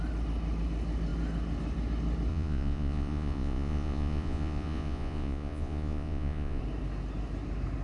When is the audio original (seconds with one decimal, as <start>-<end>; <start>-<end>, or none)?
0.0-2.3; 6.6-7.8